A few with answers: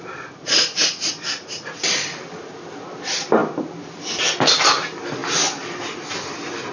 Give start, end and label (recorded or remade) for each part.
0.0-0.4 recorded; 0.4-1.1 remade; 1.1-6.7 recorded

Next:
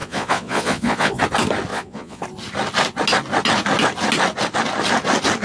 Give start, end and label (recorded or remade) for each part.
0.0-1.2 remade; 1.2-1.7 recorded; 1.7-2.2 remade; 2.2-5.4 recorded

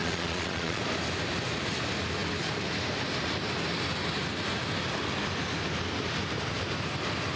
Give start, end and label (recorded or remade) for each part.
0.0-0.8 remade; 0.8-7.4 recorded